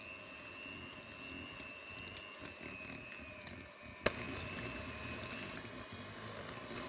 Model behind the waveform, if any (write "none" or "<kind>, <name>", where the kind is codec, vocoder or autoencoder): none